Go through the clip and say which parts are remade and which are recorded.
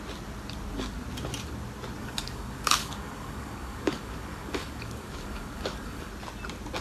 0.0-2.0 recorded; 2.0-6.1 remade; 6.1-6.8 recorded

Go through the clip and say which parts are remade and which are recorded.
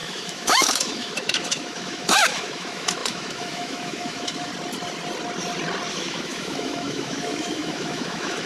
0.0-4.5 remade; 4.5-5.9 recorded; 5.9-8.5 remade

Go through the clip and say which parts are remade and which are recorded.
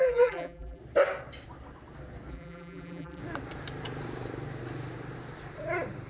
0.0-0.8 remade; 0.8-2.3 recorded; 2.3-3.2 remade; 3.2-6.1 recorded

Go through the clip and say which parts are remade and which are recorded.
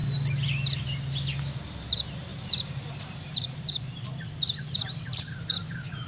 0.0-1.8 recorded; 1.8-6.1 remade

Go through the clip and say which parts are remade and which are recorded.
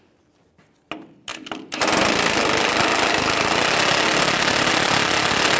0.0-5.6 recorded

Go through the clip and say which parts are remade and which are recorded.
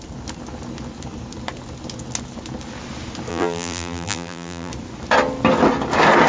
0.0-3.3 recorded; 3.3-4.7 remade; 4.7-6.3 recorded